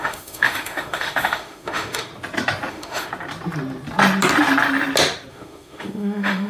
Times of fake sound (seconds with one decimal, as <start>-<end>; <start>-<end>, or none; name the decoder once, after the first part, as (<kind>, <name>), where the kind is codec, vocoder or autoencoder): 0.0-2.1 (autoencoder, DAC-VAE); 2.7-3.1; 5.3-6.5